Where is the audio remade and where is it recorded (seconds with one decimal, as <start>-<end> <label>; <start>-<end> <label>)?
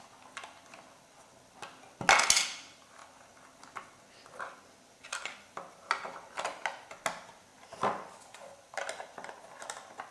0.0-10.1 recorded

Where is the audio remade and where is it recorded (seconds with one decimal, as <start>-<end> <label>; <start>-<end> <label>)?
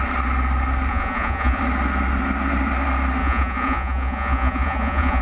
0.0-0.9 recorded; 0.9-1.6 remade; 1.6-3.2 recorded; 3.2-5.2 remade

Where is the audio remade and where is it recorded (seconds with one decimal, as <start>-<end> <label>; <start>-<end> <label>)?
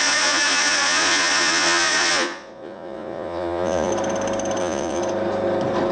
0.0-3.9 remade; 3.9-4.6 recorded; 4.6-5.0 remade; 5.0-5.9 recorded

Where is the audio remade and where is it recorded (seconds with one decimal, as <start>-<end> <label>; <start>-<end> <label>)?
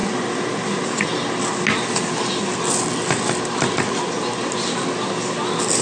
0.0-5.8 recorded